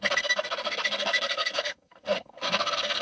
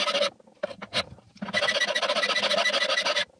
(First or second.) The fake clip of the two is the first